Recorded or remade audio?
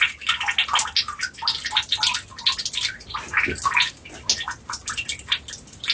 recorded